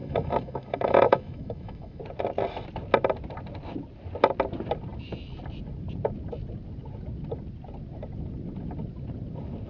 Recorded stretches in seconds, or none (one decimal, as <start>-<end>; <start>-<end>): 2.0-9.7

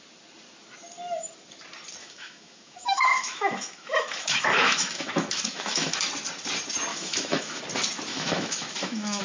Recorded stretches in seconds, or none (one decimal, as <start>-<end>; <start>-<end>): 0.0-2.0; 6.0-6.9; 7.6-8.1

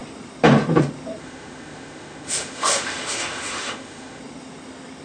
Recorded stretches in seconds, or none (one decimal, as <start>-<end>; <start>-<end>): 0.0-1.2; 4.2-5.0

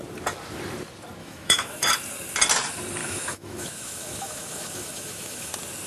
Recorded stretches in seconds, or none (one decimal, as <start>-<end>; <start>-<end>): 0.0-1.2; 1.9-3.0; 5.5-5.9

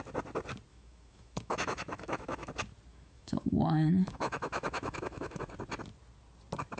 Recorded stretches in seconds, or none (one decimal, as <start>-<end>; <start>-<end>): 0.0-0.7; 2.5-2.9; 5.4-6.8